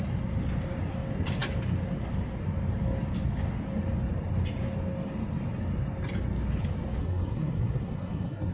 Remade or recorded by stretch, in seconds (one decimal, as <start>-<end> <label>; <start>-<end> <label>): 0.0-7.0 recorded; 7.0-8.5 remade